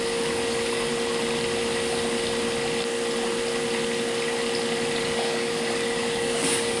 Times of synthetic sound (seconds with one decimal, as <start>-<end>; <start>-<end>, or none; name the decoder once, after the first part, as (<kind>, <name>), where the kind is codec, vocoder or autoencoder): 0.0-0.9 (codec, DAC); 5.0-6.8